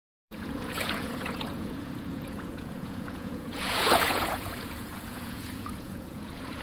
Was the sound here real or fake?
fake